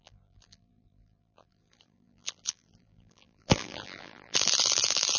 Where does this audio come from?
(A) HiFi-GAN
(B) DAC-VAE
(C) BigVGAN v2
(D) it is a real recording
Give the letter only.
C